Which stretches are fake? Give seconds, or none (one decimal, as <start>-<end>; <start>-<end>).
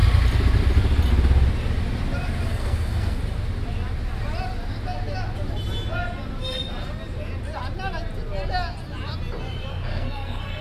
2.5-3.2; 9.7-10.6